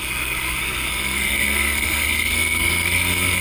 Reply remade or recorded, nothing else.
remade